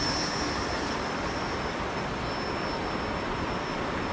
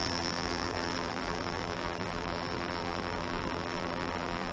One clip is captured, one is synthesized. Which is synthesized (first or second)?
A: second